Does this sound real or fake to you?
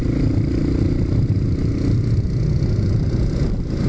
real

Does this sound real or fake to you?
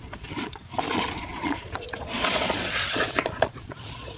fake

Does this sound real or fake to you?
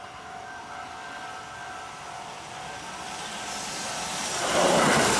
real